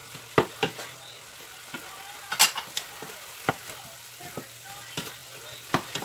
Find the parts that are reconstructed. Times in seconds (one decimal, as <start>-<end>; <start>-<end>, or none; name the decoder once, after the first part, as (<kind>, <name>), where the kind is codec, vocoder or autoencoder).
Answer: 5.2-6.0 (vocoder, BigVGAN v2)